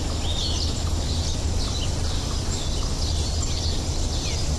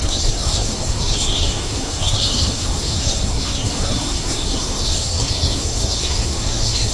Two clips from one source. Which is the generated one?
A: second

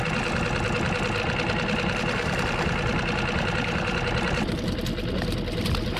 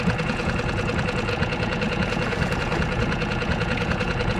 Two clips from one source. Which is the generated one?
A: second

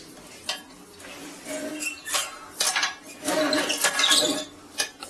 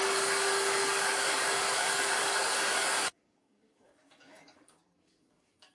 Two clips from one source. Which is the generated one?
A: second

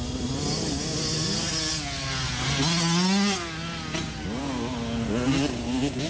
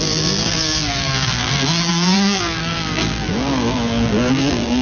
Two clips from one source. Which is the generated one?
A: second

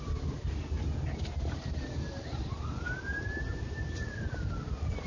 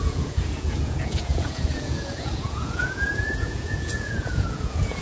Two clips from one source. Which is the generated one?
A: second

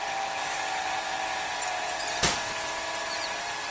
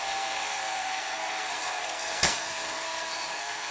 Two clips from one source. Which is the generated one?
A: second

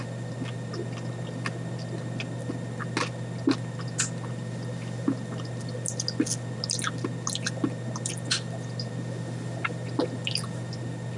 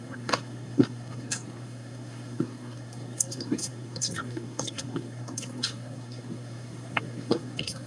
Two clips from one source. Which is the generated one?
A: second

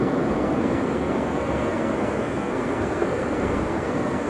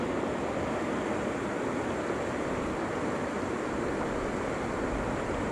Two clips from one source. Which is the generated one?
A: first